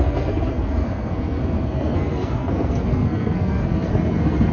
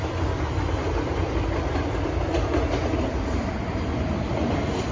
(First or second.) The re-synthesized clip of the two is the first